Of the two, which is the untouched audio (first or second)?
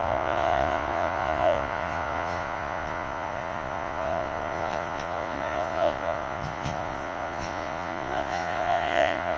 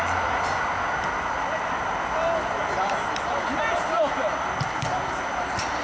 second